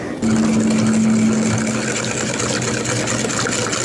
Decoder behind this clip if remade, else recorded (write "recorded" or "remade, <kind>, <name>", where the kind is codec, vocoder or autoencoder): recorded